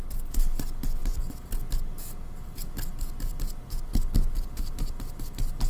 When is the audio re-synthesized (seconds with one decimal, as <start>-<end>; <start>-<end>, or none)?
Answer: none